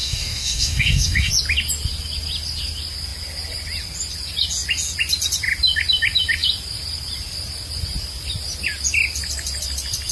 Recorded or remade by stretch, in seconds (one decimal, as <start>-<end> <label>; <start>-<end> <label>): 0.0-1.3 remade; 1.3-10.1 recorded